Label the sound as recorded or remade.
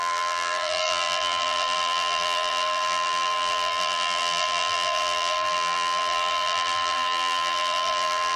remade